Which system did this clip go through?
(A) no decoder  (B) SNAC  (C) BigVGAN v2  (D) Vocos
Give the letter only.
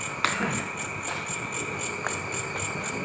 A